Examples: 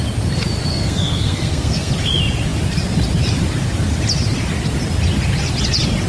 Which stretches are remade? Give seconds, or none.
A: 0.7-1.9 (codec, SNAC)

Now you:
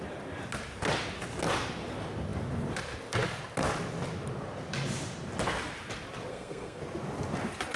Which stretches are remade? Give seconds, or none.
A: 6.3-6.8 (codec, SNAC)